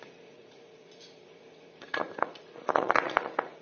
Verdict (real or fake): fake